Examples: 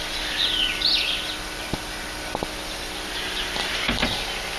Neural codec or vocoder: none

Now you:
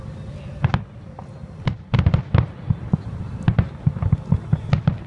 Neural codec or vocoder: none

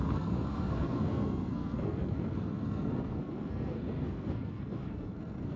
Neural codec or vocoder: codec, SNAC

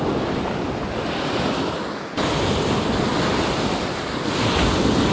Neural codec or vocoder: none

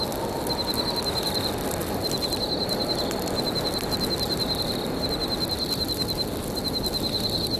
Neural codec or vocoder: none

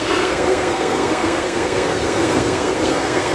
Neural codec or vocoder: codec, SNAC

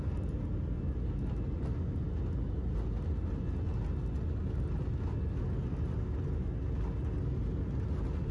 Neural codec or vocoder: none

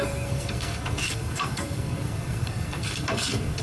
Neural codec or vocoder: codec, SNAC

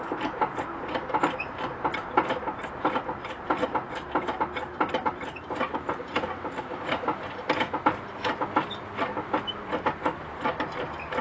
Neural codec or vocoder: none